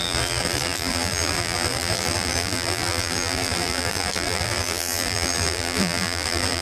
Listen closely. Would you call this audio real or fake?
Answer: fake